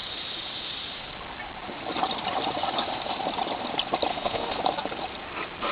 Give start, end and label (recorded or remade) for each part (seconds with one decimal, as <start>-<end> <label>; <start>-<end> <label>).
0.0-4.1 recorded; 4.1-4.6 remade; 4.6-5.7 recorded